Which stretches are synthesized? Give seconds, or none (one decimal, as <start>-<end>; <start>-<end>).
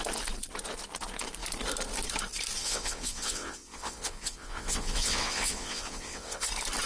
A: 2.6-6.5